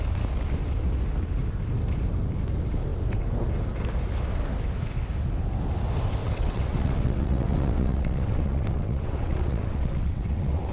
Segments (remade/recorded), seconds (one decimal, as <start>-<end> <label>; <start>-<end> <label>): 0.0-6.2 recorded; 6.2-10.7 remade